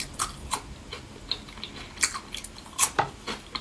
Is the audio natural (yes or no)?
yes